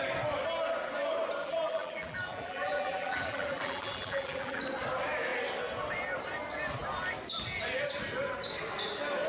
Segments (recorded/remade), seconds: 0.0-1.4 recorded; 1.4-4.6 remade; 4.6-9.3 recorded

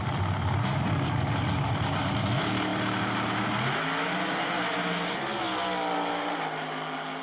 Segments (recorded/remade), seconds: 0.0-7.2 recorded